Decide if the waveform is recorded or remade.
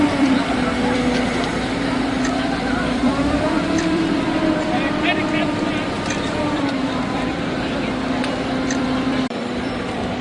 remade